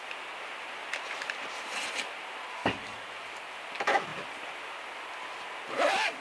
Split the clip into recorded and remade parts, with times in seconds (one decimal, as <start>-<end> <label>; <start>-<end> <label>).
0.0-2.6 recorded; 2.6-3.1 remade; 3.1-6.2 recorded